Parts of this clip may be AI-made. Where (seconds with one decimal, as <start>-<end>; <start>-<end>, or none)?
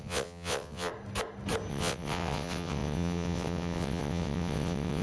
0.0-0.9; 1.7-5.0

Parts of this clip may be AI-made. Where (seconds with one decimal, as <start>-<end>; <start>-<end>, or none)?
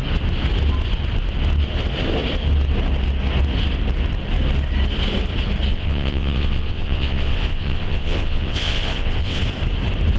5.7-9.4